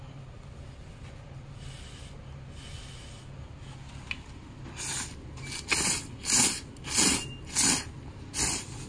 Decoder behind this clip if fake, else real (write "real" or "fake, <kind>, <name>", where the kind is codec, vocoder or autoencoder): real